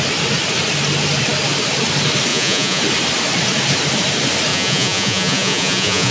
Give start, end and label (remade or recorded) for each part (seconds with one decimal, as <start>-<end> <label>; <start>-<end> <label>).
0.0-2.3 recorded; 2.3-2.8 remade; 2.8-4.5 recorded; 4.5-6.1 remade